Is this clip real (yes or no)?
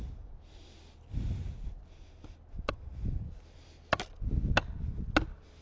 yes